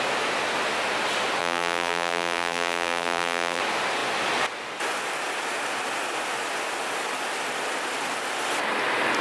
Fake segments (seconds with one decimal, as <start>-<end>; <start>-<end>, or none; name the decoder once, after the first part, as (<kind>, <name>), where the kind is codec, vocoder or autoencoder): 1.4-3.6 (vocoder, BigVGAN v2)

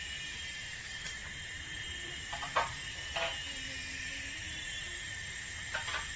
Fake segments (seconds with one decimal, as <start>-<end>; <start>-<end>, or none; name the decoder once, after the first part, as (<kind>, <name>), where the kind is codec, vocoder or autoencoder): 0.0-2.8 (vocoder, BigVGAN v2); 3.9-5.5

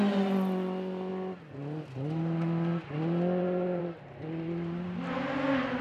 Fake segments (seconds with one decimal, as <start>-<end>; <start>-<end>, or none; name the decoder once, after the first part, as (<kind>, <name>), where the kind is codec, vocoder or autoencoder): none

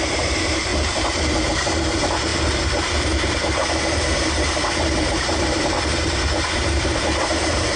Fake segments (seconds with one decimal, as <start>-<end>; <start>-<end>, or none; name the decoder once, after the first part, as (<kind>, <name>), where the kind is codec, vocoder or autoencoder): 0.0-7.8 (vocoder, BigVGAN v2)

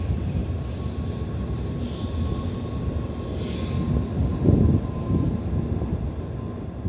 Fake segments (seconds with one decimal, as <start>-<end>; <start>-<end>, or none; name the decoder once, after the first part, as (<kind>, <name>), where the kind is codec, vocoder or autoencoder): 0.4-1.4 (vocoder, BigVGAN v2); 4.3-5.3

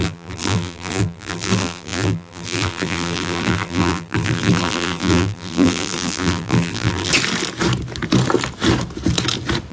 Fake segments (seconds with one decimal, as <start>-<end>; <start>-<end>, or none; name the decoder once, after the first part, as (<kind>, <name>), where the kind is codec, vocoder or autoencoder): 0.0-7.1 (vocoder, BigVGAN v2)

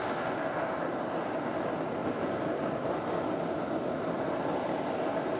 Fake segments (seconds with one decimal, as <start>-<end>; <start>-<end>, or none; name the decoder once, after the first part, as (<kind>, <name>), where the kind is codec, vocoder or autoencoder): 2.0-2.7 (vocoder, BigVGAN v2)